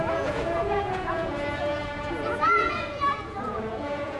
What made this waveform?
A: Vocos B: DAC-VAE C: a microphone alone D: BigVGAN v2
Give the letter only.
A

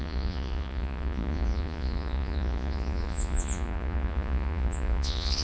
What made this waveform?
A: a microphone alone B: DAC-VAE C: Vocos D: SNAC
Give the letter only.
C